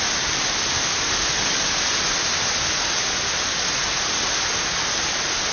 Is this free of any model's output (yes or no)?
yes